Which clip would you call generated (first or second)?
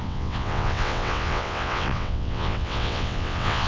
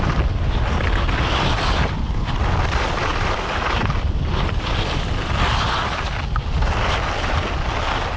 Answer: first